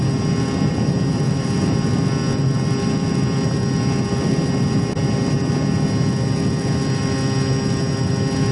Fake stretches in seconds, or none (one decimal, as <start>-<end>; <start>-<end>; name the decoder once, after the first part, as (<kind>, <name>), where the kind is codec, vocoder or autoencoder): none